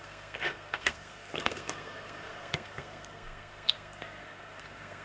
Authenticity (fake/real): fake